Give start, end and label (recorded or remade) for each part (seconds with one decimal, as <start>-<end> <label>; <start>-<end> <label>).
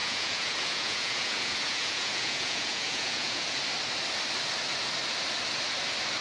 0.0-3.6 remade; 3.6-6.2 recorded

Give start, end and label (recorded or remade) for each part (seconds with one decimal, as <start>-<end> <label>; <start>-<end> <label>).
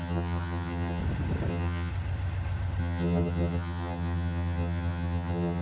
0.0-1.0 remade; 1.0-1.5 recorded; 1.5-1.9 remade; 1.9-2.8 recorded; 2.8-5.6 remade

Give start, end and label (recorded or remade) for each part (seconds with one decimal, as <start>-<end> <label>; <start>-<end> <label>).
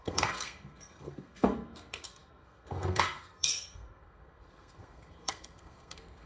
0.0-6.3 remade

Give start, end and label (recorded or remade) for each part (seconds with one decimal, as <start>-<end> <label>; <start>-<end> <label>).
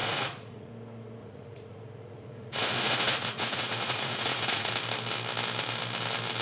0.0-0.7 remade; 0.7-1.2 recorded; 1.2-4.7 remade; 4.7-6.4 recorded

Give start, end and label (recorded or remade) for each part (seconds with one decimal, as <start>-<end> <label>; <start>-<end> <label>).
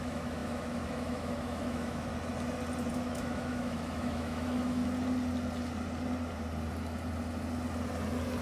0.0-2.1 remade; 2.1-2.9 recorded; 2.9-4.8 remade; 4.8-8.4 recorded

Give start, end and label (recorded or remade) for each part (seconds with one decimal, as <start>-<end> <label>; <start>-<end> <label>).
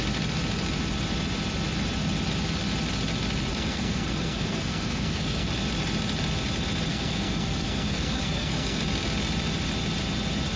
0.0-3.5 recorded; 3.5-5.5 remade; 5.5-6.9 recorded; 6.9-8.8 remade; 8.8-10.6 recorded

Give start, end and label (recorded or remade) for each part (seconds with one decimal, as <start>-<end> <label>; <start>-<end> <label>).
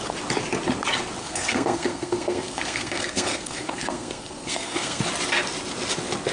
0.0-1.2 recorded; 1.2-5.0 remade; 5.0-6.3 recorded